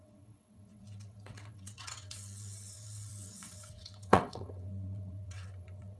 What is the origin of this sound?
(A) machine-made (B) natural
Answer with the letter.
A